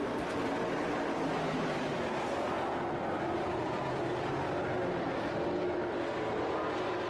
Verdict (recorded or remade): recorded